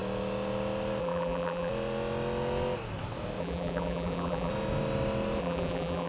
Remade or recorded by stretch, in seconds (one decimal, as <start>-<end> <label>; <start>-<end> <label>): 0.0-1.0 recorded; 1.0-1.7 remade; 1.7-3.4 recorded; 3.4-4.5 remade; 4.5-5.4 recorded; 5.4-6.1 remade